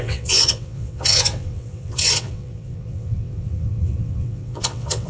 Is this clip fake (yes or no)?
yes